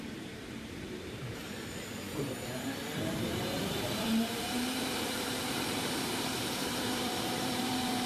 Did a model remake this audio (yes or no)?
yes